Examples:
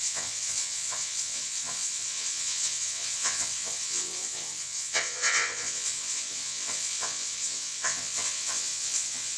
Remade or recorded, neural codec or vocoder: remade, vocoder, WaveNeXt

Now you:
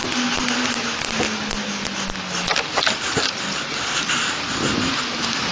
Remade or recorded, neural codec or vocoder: recorded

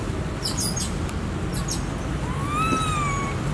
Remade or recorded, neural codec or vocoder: recorded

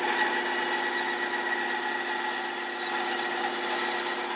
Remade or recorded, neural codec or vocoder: recorded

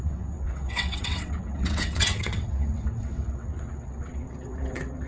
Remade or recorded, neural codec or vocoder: remade, vocoder, WaveNeXt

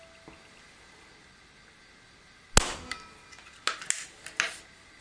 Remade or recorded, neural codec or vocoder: recorded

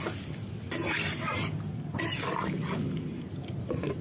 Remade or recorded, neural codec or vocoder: recorded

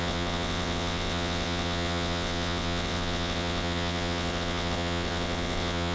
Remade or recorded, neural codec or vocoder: remade, vocoder, WaveNeXt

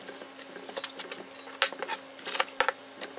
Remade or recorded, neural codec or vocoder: recorded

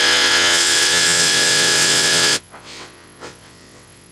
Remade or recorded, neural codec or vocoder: remade, vocoder, WaveNeXt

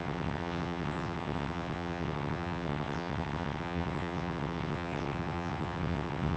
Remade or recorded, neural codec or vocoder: remade, vocoder, WaveNeXt